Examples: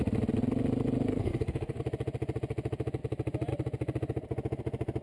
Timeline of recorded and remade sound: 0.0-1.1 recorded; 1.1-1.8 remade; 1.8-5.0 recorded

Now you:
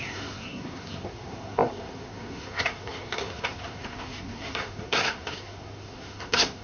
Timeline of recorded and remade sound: 0.0-6.6 remade

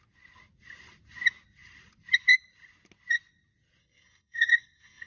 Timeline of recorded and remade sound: 0.0-3.8 recorded; 3.8-5.1 remade

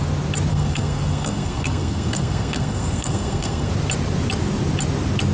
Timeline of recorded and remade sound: 0.0-0.5 recorded; 0.5-3.7 remade; 3.7-5.3 recorded

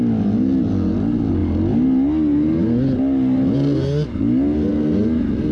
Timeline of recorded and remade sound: 0.0-5.5 recorded

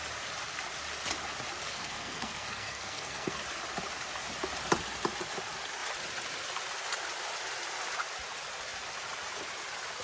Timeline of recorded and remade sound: 0.0-1.6 recorded; 1.6-3.4 remade; 3.4-10.0 recorded

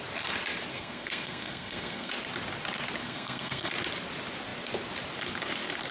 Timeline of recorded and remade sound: 0.0-0.7 recorded; 0.7-2.1 remade; 2.1-3.0 recorded; 3.0-3.7 remade; 3.7-5.9 recorded